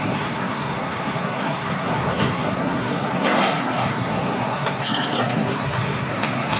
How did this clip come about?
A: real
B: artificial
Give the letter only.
B